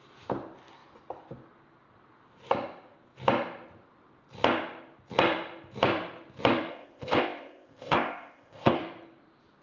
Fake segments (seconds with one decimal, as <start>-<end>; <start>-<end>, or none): 6.7-8.8